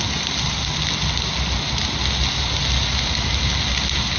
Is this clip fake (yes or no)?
no